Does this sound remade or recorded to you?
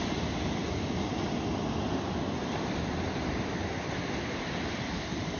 recorded